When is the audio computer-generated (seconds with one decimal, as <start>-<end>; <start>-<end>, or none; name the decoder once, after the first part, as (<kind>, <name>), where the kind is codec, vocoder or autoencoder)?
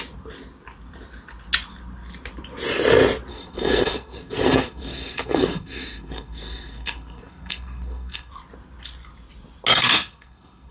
3.3-8.3 (codec, SNAC); 9.7-10.7